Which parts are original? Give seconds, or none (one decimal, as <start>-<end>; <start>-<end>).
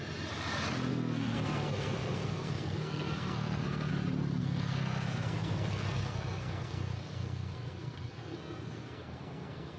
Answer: 0.0-0.9; 3.9-4.4